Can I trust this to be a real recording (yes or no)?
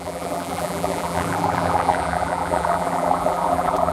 no